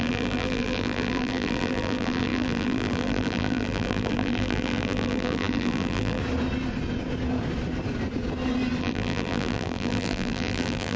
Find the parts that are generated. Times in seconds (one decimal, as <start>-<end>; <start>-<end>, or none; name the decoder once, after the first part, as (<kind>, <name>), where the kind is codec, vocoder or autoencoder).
0.0-6.2 (vocoder, BigVGAN v2); 8.8-11.0